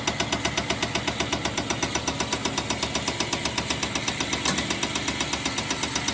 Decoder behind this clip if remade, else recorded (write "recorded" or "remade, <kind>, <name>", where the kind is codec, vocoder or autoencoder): recorded